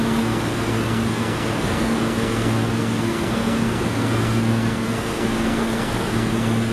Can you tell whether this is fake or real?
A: fake